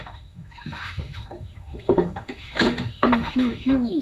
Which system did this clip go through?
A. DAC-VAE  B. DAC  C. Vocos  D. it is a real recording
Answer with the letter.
A